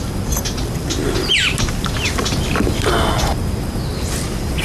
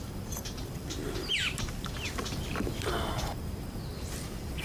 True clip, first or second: first